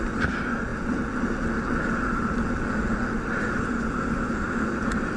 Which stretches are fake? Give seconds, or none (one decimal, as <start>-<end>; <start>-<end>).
0.0-0.7; 3.6-5.2